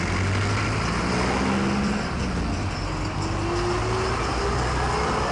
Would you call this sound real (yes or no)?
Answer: yes